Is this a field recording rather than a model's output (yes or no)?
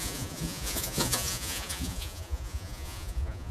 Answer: no